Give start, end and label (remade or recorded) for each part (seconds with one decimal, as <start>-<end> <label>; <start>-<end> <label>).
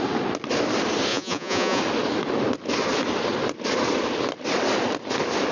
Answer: 0.0-1.1 recorded; 1.1-1.8 remade; 1.8-5.5 recorded